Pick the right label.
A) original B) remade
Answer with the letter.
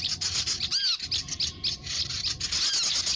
A